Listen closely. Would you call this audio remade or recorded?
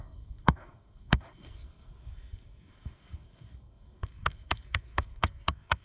remade